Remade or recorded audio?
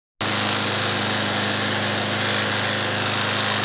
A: recorded